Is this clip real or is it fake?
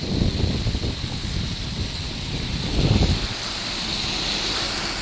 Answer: real